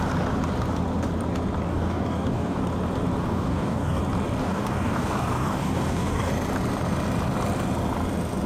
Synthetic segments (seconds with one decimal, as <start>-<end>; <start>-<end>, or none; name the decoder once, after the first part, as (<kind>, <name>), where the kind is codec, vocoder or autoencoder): 1.7-2.6 (codec, DAC); 3.2-4.0; 4.4-6.3